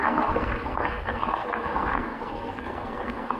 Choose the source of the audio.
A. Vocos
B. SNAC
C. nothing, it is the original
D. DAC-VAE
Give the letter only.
B